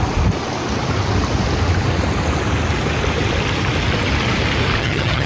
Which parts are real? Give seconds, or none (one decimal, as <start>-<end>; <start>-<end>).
0.0-4.8